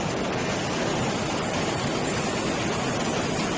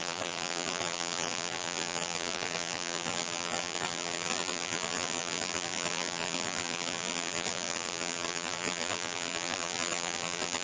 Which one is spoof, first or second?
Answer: second